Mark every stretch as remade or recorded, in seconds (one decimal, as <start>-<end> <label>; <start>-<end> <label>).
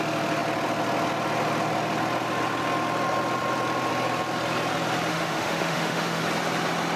0.0-5.1 recorded; 5.1-6.2 remade; 6.2-7.0 recorded